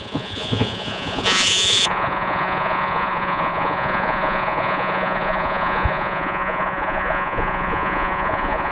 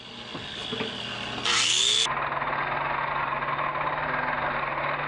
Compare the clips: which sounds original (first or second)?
second